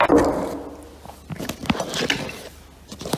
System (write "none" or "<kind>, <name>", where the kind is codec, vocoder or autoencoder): none